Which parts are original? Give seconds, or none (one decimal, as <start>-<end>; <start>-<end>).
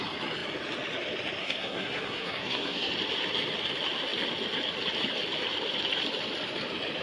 0.0-1.4; 2.9-7.0